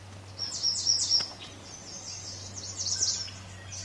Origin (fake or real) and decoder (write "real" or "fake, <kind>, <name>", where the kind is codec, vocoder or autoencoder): real